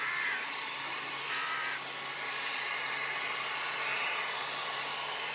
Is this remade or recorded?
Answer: recorded